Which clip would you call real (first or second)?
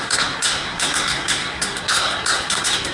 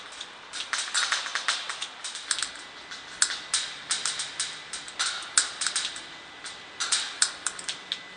second